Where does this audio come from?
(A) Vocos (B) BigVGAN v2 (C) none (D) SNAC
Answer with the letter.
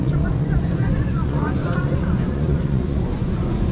A